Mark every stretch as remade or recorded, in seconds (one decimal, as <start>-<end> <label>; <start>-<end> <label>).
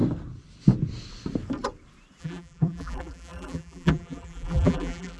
0.0-2.2 recorded; 2.2-5.2 remade